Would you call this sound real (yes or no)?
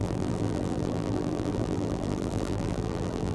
no